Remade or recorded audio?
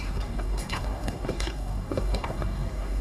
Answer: remade